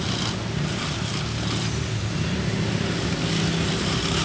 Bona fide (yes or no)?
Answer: yes